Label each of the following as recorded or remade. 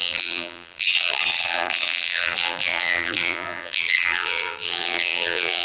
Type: remade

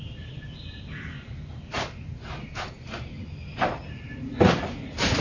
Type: recorded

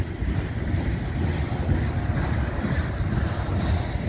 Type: recorded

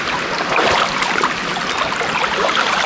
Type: recorded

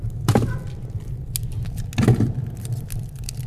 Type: recorded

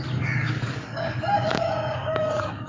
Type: remade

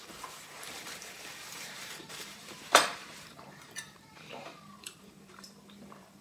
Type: remade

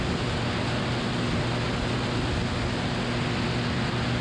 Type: recorded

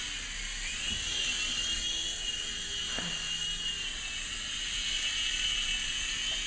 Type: recorded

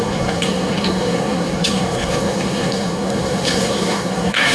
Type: remade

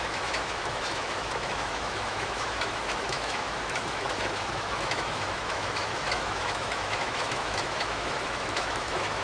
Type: remade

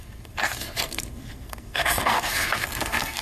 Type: remade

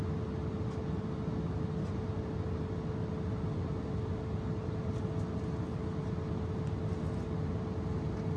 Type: recorded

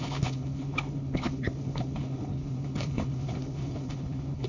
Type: remade